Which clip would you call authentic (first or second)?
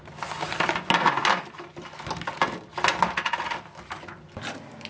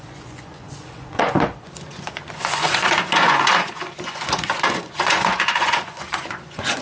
first